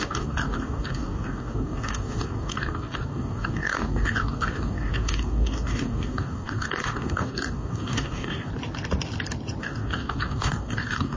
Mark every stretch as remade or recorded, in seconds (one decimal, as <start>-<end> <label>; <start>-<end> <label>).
0.0-8.5 remade; 8.5-9.6 recorded; 9.6-11.2 remade